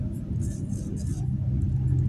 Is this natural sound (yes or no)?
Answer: yes